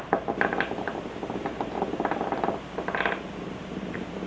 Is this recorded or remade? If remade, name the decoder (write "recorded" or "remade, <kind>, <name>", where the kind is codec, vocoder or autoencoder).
recorded